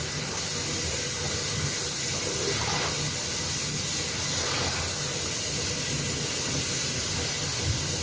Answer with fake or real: real